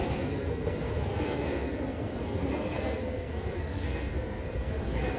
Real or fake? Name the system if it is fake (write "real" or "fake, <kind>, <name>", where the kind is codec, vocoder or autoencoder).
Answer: fake, codec, SNAC